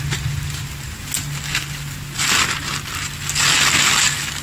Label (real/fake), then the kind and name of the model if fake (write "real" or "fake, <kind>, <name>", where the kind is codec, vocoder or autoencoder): real